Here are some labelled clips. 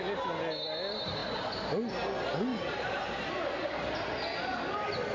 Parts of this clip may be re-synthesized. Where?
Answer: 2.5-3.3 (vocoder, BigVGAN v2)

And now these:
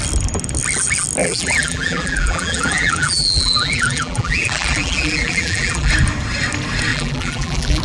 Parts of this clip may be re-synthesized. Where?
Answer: 1.2-5.9 (vocoder, BigVGAN v2); 6.9-7.8

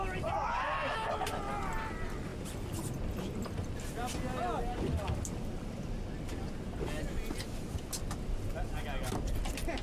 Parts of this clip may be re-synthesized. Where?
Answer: none

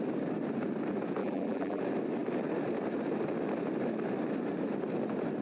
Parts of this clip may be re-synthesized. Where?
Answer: 1.2-1.8 (vocoder, BigVGAN v2)

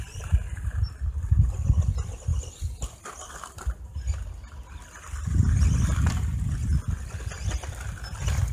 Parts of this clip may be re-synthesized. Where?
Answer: 0.0-2.3 (vocoder, BigVGAN v2); 3.9-6.6; 7.5-8.5

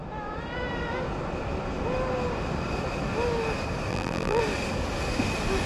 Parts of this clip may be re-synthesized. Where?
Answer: 3.9-4.4 (vocoder, BigVGAN v2)

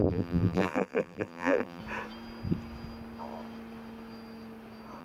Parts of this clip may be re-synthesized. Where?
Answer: 0.0-1.8 (vocoder, BigVGAN v2)

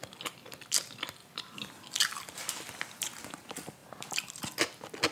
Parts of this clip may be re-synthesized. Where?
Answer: 1.2-2.5 (vocoder, BigVGAN v2); 3.8-4.4